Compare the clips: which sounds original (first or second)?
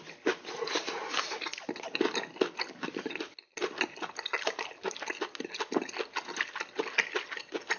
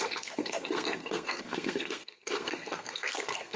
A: first